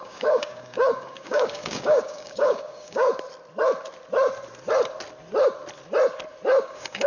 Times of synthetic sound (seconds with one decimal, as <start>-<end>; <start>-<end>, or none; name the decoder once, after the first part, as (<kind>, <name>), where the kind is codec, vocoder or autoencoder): 0.0-3.1 (codec, DAC); 6.6-7.1